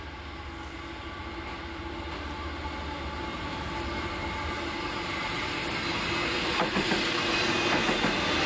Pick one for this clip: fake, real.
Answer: real